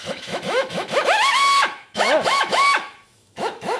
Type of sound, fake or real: fake